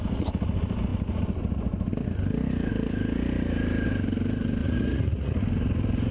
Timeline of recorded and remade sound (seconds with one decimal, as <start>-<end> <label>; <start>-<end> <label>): 0.0-4.6 recorded; 4.6-5.4 remade; 5.4-6.1 recorded

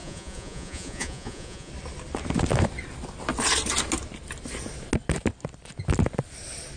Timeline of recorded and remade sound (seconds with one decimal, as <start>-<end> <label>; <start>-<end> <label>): 0.0-1.7 remade; 1.7-6.8 recorded

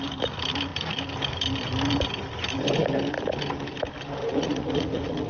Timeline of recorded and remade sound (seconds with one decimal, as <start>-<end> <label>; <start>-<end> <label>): 0.0-4.2 recorded; 4.2-5.3 remade

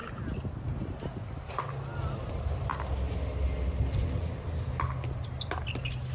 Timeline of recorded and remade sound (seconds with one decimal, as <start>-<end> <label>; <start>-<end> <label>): 0.0-6.1 recorded

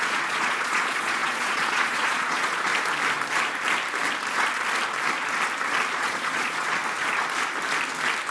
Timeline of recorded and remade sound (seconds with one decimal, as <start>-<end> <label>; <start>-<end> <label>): 0.0-2.7 remade; 2.7-5.9 recorded; 5.9-6.8 remade; 6.8-8.3 recorded

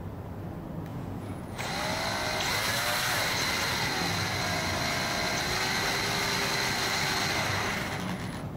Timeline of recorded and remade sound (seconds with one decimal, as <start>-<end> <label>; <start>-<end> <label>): 0.0-0.9 recorded; 0.9-1.7 remade; 1.7-8.6 recorded

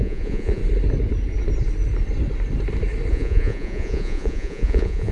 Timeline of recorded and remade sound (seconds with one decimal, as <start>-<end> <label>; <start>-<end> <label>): 0.0-0.6 remade; 0.6-3.1 recorded; 3.1-5.1 remade